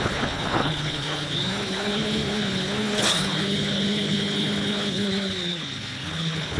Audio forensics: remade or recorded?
remade